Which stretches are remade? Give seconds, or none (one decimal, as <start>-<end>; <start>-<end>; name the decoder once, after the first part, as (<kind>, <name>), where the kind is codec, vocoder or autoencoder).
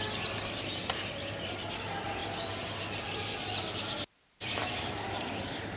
none